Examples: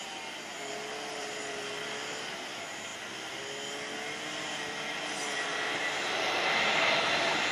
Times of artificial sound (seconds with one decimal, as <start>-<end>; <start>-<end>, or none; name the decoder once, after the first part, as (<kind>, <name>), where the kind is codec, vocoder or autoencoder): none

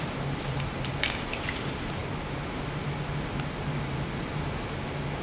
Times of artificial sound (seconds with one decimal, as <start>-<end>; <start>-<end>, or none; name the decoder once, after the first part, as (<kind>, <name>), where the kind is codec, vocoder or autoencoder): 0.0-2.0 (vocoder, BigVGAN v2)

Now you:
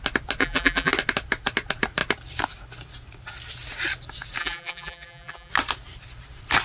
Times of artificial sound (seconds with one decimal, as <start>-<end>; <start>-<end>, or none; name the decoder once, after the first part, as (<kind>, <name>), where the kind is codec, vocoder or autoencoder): 0.4-0.9 (vocoder, BigVGAN v2); 4.4-5.5

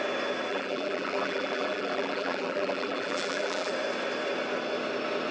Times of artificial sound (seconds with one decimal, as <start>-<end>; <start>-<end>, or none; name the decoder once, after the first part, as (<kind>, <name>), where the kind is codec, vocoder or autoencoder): 0.5-3.7 (vocoder, BigVGAN v2)

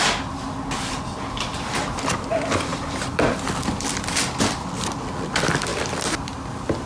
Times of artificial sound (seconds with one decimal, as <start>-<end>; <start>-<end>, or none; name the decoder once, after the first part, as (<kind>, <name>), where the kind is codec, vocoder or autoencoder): 2.7-4.7 (vocoder, BigVGAN v2)

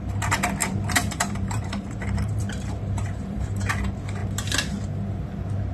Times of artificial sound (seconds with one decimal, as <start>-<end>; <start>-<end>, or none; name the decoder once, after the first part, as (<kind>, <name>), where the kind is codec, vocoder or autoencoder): 0.6-3.7 (vocoder, BigVGAN v2)

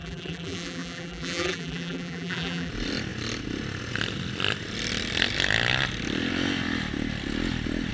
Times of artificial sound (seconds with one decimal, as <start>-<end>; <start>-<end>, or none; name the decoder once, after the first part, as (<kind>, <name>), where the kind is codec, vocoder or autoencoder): 0.0-2.7 (vocoder, BigVGAN v2)